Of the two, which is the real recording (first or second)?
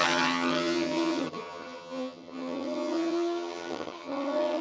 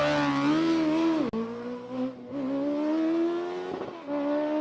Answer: second